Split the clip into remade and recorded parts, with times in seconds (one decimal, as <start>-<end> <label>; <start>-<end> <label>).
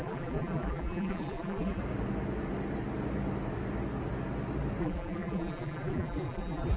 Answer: 0.0-1.8 remade; 1.8-4.8 recorded; 4.8-6.8 remade